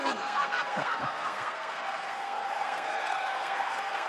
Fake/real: fake